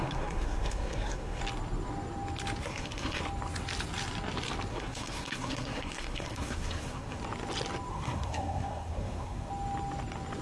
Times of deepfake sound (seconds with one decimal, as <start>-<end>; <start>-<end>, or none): 0.0-1.4; 2.6-3.2; 4.7-7.2; 7.9-9.5